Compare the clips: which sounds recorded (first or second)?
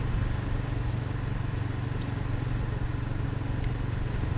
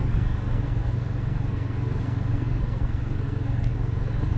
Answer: first